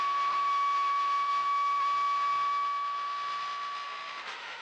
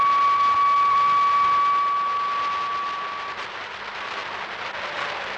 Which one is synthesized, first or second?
first